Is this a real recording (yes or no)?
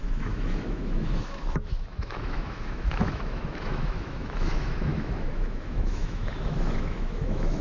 no